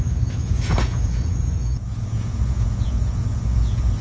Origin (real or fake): fake